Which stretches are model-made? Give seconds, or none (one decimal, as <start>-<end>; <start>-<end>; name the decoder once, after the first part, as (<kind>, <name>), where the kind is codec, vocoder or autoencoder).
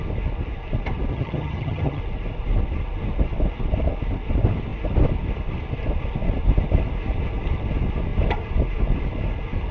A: 1.1-2.0 (vocoder, HiFi-GAN)